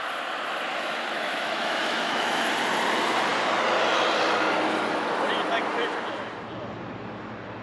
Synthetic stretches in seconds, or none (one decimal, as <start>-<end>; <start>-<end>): 0.7-2.5